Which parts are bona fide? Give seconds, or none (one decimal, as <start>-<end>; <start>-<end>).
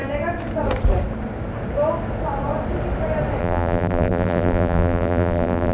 0.0-3.4